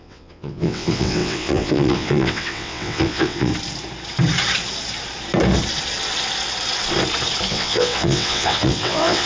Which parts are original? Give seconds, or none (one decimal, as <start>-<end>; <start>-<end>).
3.5-7.5